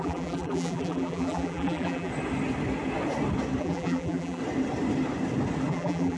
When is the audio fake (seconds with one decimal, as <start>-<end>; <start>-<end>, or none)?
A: 0.0-2.1; 3.6-4.4; 5.7-6.2